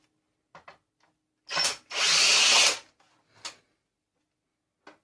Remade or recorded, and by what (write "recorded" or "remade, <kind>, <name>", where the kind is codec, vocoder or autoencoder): recorded